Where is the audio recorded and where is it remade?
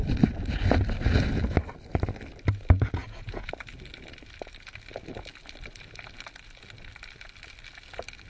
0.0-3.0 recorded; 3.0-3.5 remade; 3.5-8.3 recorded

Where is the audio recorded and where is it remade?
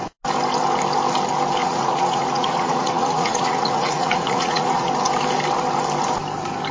0.0-1.6 recorded; 1.6-4.9 remade; 4.9-6.7 recorded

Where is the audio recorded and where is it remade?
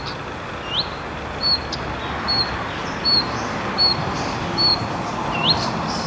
0.0-6.1 recorded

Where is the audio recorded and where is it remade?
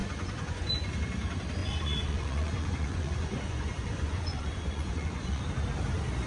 0.0-0.7 remade; 0.7-1.6 recorded; 1.6-5.4 remade; 5.4-6.3 recorded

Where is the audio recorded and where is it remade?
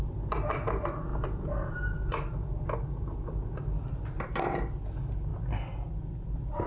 0.0-6.7 recorded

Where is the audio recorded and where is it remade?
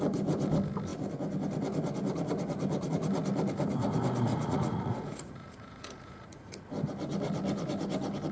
0.0-4.3 recorded; 4.3-6.6 remade; 6.6-8.3 recorded